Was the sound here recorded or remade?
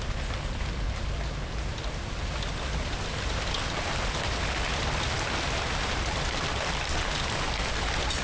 recorded